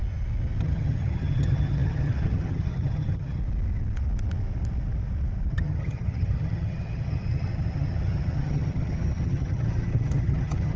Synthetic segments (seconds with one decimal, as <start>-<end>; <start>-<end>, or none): 0.6-3.4; 5.5-10.8